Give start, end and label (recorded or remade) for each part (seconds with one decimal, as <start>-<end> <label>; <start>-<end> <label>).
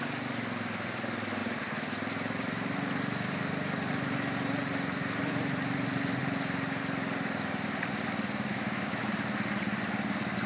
0.0-8.5 recorded; 8.5-9.1 remade; 9.1-10.5 recorded